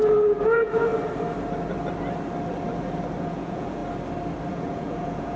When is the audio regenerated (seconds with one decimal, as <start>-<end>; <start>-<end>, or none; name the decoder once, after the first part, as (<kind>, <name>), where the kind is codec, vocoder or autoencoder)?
0.0-0.9 (vocoder, Vocos); 3.2-3.8; 4.5-5.4